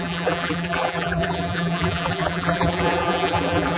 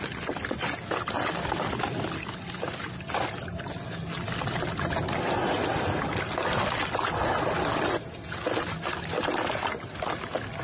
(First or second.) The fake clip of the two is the first